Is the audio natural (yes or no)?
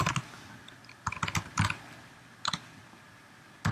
yes